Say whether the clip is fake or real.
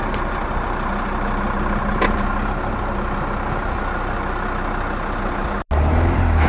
real